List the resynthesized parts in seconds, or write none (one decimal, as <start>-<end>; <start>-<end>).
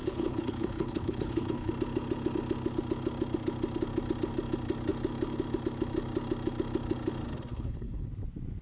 0.0-1.7; 7.5-8.1